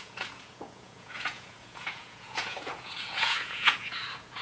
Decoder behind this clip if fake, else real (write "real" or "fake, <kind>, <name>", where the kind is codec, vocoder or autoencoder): fake, vocoder, Vocos